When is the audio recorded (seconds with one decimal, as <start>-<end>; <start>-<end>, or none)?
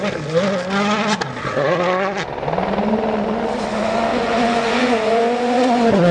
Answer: 0.0-4.1